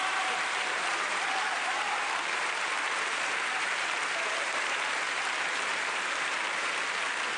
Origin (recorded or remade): remade